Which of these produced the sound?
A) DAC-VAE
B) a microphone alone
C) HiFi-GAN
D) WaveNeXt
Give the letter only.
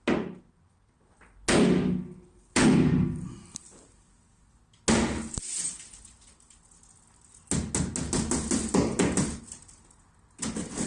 B